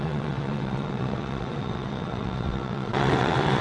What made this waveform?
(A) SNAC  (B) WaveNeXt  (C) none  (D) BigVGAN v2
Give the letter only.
B